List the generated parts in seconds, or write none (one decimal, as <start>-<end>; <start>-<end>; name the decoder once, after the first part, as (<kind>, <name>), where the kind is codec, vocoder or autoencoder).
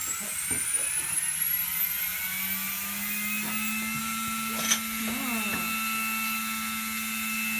none